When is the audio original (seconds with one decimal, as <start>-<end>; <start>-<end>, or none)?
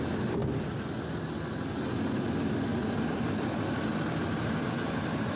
0.0-5.4